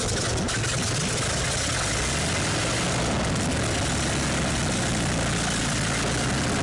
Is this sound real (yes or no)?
yes